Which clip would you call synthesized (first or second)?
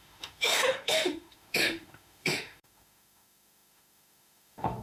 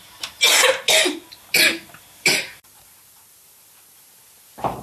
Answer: first